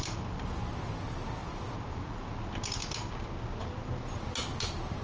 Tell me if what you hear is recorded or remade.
recorded